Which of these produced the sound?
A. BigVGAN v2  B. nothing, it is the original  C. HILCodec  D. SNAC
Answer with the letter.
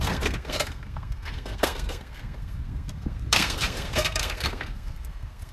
D